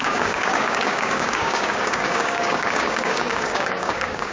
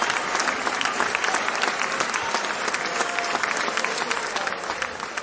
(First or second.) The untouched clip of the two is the second